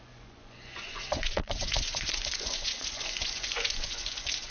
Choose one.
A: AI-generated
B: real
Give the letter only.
A